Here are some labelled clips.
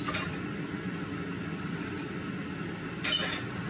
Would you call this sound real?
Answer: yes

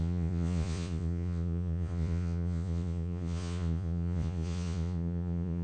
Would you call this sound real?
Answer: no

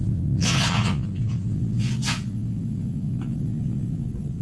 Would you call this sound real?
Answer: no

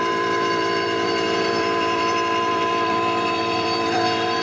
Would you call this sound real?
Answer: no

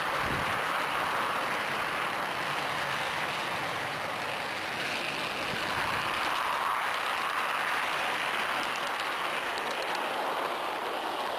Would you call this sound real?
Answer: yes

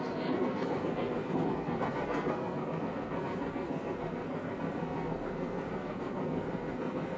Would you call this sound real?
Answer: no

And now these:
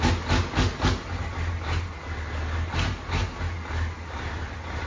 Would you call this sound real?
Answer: yes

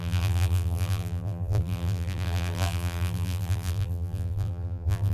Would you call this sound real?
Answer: no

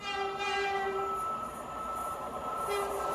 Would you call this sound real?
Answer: no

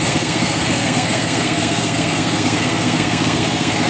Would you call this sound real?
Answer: no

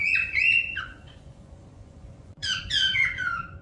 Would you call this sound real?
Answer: no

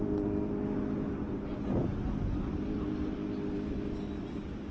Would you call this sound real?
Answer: yes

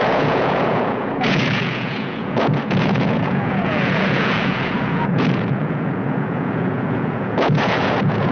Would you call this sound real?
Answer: no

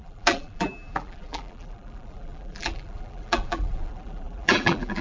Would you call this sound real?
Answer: no